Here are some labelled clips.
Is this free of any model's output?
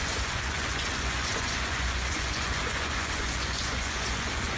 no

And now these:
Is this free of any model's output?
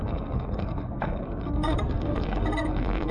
no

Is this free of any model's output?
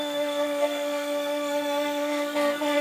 no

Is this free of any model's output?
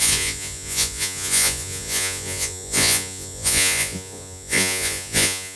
no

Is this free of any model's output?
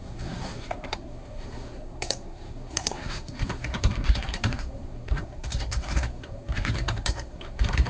no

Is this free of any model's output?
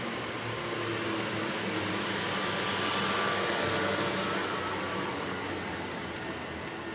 yes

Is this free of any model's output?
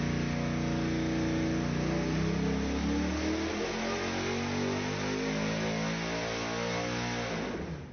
yes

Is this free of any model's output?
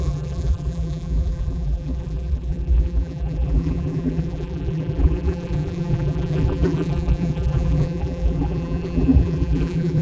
no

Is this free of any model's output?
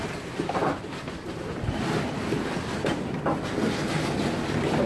yes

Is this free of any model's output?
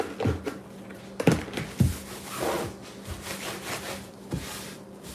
yes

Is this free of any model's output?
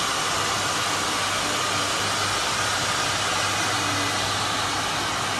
yes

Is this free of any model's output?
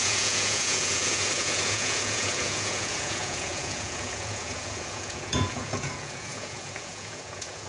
no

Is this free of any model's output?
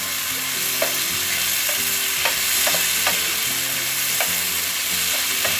yes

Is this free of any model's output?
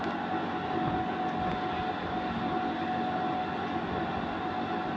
yes